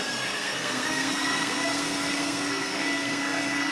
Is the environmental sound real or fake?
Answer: fake